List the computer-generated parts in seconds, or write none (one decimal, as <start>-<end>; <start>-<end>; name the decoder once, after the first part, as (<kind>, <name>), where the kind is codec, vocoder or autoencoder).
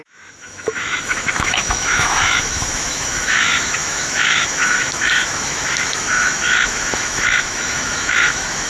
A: 0.0-8.7 (autoencoder, DAC-VAE)